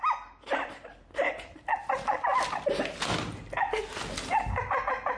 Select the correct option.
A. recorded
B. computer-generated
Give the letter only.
A